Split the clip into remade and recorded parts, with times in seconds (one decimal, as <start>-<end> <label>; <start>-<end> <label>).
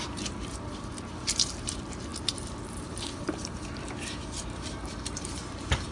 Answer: 0.0-5.9 remade